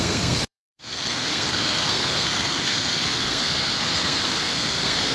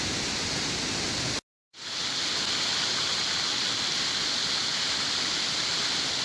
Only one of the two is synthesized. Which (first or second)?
first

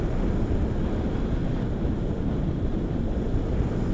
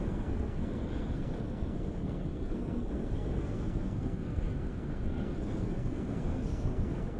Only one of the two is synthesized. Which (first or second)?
second